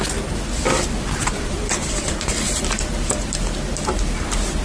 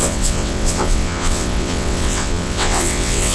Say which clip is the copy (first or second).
second